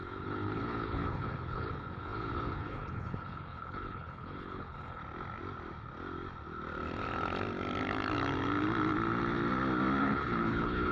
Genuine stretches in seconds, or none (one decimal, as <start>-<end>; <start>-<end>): 5.0-10.0